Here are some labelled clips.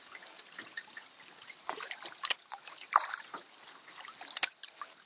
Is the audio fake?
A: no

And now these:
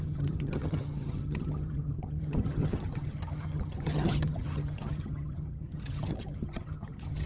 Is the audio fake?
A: yes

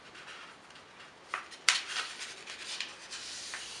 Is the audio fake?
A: yes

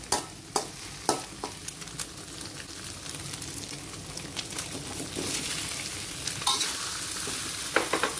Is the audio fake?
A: no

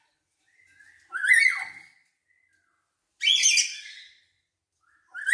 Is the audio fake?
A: no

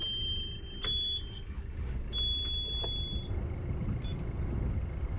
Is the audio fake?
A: no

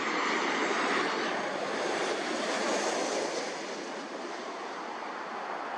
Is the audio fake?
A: no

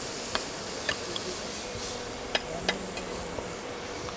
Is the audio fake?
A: no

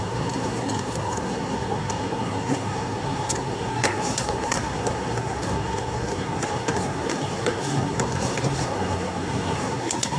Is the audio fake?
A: yes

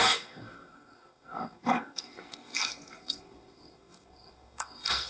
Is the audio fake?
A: yes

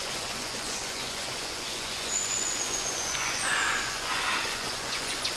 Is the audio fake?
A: yes